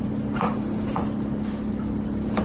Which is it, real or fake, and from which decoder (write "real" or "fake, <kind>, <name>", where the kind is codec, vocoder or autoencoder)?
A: real